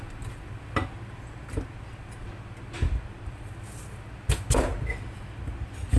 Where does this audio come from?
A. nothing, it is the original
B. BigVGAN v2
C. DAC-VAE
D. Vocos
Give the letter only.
A